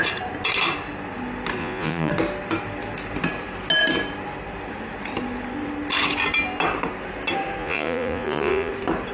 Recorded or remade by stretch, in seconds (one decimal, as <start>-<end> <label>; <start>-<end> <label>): 0.0-1.6 recorded; 1.6-2.1 remade; 2.1-7.6 recorded; 7.6-8.7 remade; 8.7-9.1 recorded

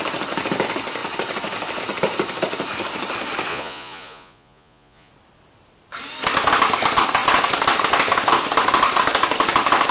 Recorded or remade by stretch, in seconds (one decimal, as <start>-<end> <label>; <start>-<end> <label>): 0.0-3.5 recorded; 3.5-5.1 remade; 5.1-9.9 recorded